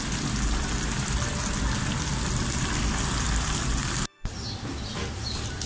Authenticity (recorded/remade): recorded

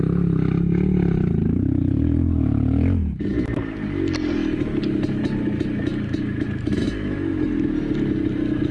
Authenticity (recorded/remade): recorded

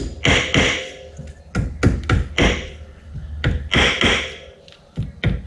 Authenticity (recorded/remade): recorded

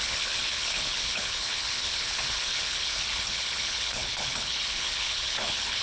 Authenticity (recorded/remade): remade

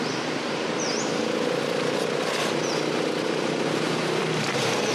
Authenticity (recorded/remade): recorded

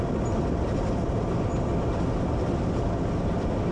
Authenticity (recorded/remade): recorded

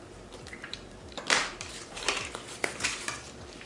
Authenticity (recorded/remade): remade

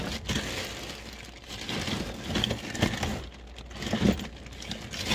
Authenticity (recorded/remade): recorded